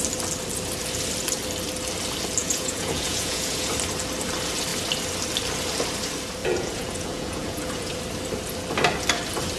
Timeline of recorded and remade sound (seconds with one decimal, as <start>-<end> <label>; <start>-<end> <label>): 0.0-2.4 recorded; 2.4-3.7 remade; 3.7-6.4 recorded; 6.4-8.0 remade; 8.0-9.6 recorded